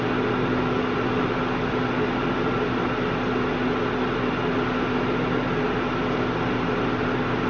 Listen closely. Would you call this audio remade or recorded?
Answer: recorded